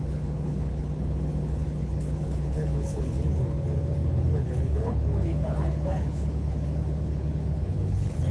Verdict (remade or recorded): remade